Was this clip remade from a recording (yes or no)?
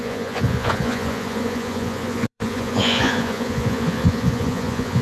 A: yes